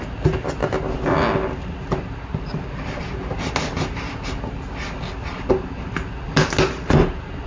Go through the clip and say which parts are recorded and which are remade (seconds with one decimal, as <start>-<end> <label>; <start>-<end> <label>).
0.0-7.5 recorded